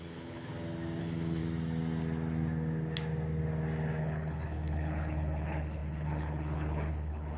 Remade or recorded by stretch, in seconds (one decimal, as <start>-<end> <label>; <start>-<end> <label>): 0.0-0.5 remade; 0.5-1.0 recorded; 1.0-1.4 remade; 1.4-4.0 recorded; 4.0-7.4 remade